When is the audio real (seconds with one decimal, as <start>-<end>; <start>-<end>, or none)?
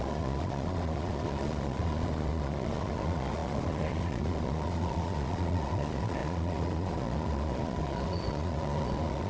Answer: none